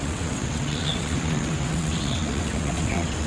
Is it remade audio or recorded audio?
remade